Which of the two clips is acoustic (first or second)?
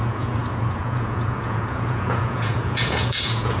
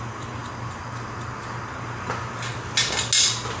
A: second